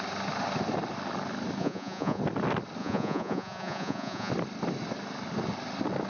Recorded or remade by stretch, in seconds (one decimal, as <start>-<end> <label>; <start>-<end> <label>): 0.0-1.6 recorded; 1.6-2.2 remade; 2.2-2.8 recorded; 2.8-4.3 remade; 4.3-6.1 recorded